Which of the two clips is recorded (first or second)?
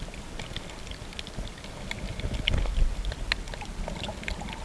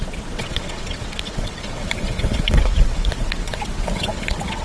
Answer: first